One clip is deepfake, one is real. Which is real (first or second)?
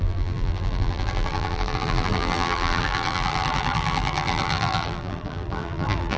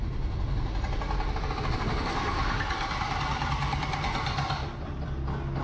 second